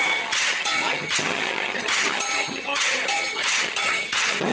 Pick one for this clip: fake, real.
fake